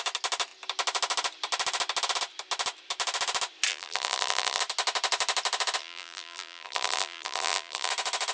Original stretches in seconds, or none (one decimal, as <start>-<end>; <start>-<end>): 0.0-3.7; 4.6-5.8; 7.9-8.3